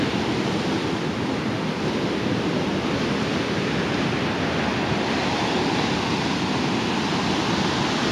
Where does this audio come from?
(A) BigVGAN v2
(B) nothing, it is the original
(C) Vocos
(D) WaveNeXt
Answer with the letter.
B